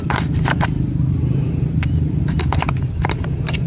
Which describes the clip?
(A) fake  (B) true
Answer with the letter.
A